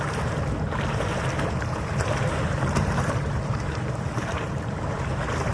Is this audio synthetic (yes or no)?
yes